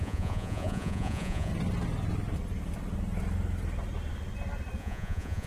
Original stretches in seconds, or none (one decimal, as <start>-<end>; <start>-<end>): 1.5-4.8